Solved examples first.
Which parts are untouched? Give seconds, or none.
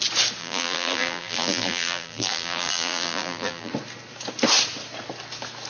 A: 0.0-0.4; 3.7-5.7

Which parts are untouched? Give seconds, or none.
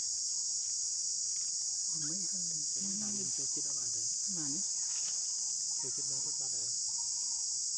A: 0.0-6.6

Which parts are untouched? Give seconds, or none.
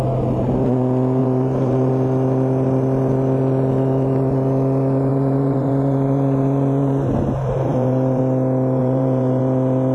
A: 0.0-1.2; 1.9-5.1; 8.2-8.8; 9.4-9.9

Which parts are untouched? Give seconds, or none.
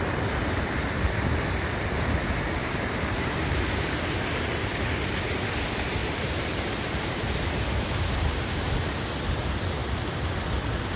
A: 0.0-2.6; 4.8-6.0; 9.0-11.0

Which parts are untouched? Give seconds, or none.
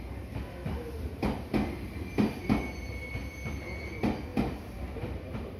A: 0.0-4.3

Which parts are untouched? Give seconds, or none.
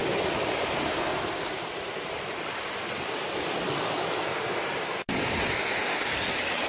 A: 0.6-1.1; 2.4-6.7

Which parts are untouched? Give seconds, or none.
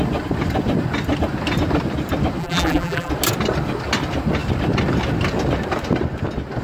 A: 0.0-2.4; 3.1-6.6